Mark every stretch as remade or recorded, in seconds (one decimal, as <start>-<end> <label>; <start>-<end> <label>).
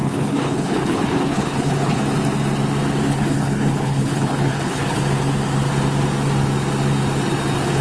0.0-2.0 remade; 2.0-3.1 recorded; 3.1-5.0 remade; 5.0-7.8 recorded